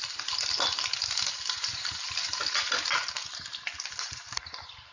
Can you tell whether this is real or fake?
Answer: real